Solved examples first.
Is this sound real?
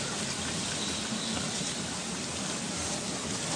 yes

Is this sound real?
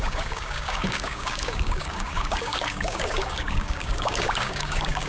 no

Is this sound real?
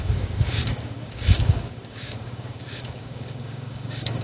no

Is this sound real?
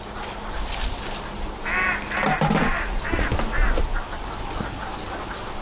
yes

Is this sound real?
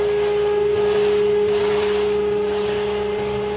yes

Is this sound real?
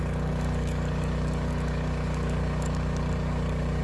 no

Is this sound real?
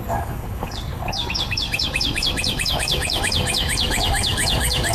no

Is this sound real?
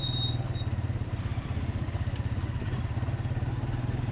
yes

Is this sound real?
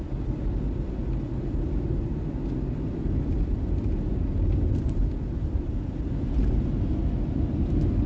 yes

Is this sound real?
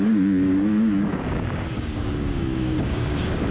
no